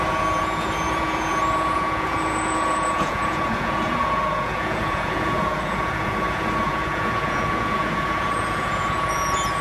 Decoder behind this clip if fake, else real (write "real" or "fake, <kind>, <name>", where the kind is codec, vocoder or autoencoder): fake, vocoder, Vocos